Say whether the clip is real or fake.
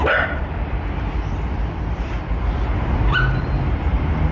fake